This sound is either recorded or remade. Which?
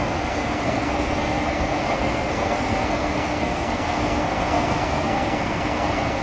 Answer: remade